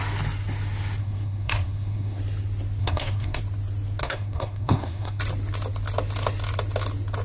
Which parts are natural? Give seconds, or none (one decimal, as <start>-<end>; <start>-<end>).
0.0-1.0; 2.2-2.8; 3.4-4.0; 5.2-7.2